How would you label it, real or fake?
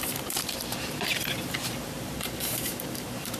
fake